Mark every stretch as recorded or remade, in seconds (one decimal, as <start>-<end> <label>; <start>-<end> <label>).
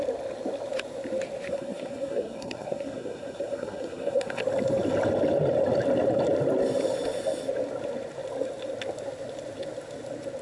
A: 0.0-1.5 recorded; 1.5-4.4 remade; 4.4-10.4 recorded